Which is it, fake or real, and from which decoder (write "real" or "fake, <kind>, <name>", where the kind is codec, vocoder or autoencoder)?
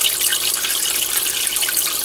real